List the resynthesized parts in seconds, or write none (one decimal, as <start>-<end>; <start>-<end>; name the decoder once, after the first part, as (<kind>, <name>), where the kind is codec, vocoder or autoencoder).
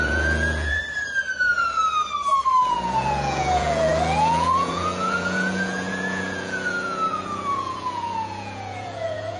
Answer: 0.0-0.8 (vocoder, Vocos); 1.4-1.8; 2.6-9.4